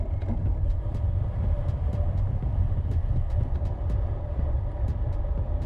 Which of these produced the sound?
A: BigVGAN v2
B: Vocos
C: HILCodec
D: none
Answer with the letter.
D